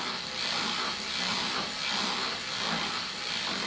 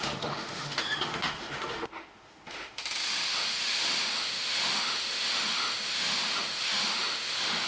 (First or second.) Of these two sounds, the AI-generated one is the second